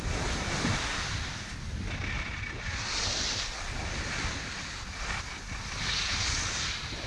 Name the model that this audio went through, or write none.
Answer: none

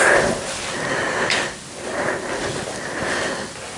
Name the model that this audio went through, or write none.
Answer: none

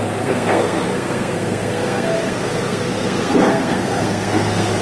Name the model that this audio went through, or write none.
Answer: codec, SNAC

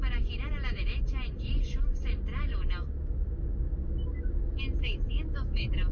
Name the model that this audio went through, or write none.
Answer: none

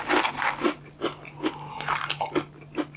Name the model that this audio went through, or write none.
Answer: none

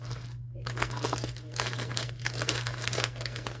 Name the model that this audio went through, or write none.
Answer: codec, SNAC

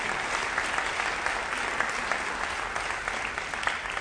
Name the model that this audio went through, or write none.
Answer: none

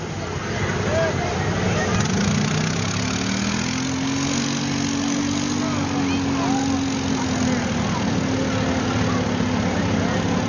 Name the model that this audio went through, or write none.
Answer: none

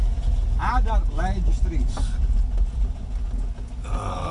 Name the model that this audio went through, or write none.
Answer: none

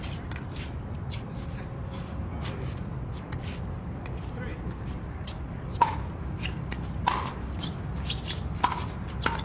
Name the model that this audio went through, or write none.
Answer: none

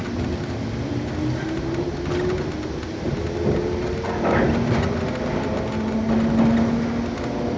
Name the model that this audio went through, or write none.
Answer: none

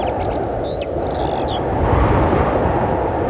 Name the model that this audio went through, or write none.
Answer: none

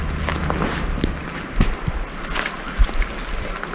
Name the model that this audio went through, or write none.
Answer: none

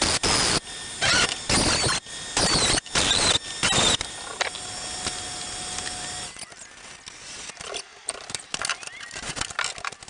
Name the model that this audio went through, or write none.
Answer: none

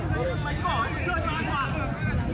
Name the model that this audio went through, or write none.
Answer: none